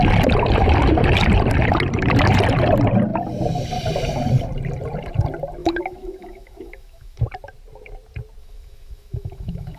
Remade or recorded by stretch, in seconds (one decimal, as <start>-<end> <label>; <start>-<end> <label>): 0.0-5.6 recorded; 5.6-7.2 remade; 7.2-8.4 recorded; 8.4-9.8 remade